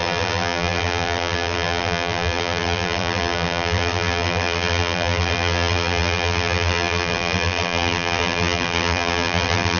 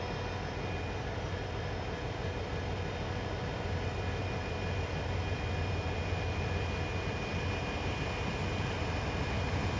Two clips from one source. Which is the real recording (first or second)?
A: second